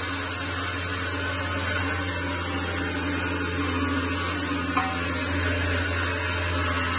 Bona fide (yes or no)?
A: yes